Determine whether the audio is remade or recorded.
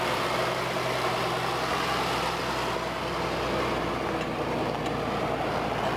recorded